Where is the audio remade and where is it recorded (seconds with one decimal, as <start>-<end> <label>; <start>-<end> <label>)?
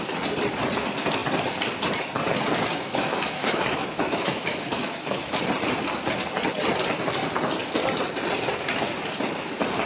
0.0-2.7 recorded; 2.7-5.4 remade; 5.4-9.9 recorded